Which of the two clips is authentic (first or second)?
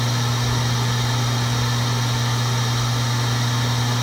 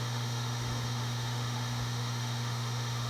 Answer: first